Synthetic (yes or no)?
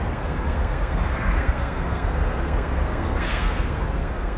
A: yes